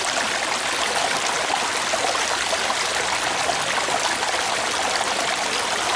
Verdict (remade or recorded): recorded